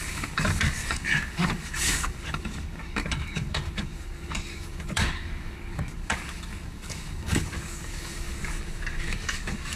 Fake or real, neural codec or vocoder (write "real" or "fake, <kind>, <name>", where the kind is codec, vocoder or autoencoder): fake, codec, DAC